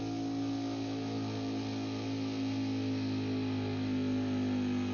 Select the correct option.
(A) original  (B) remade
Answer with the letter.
A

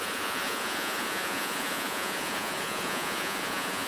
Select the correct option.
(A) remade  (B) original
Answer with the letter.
A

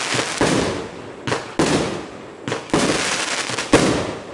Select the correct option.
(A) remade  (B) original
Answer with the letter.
B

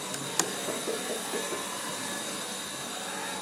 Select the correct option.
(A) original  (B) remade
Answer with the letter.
A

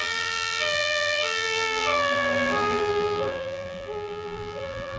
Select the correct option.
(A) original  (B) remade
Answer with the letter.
B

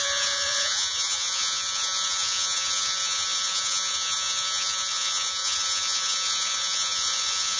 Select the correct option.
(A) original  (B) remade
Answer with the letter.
B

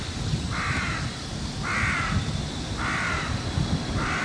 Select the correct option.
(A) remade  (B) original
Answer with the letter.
B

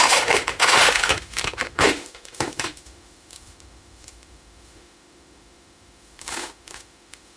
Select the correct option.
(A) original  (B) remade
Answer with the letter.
B